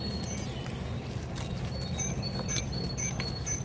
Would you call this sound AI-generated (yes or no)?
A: no